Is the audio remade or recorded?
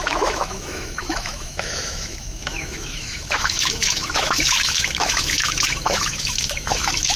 remade